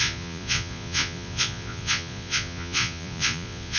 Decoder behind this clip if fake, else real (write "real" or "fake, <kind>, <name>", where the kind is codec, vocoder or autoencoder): fake, vocoder, Vocos